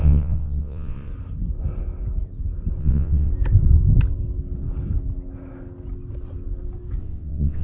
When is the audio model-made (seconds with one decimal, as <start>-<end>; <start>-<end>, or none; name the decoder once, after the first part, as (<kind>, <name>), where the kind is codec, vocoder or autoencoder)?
0.0-1.1 (vocoder, WaveNeXt); 2.8-3.3; 7.0-7.6